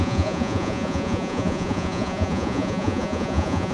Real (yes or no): no